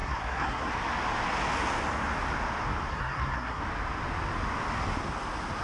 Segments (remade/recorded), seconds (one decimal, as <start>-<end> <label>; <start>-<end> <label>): 0.0-0.7 remade; 0.7-2.9 recorded; 2.9-3.6 remade; 3.6-5.6 recorded